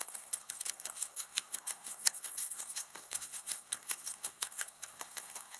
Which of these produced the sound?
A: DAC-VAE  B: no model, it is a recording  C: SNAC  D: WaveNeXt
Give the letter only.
C